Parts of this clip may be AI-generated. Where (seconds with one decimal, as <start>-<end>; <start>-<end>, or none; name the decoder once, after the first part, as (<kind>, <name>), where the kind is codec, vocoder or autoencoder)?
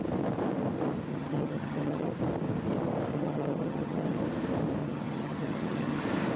1.1-2.1 (vocoder, HiFi-GAN); 3.1-4.2; 4.8-6.0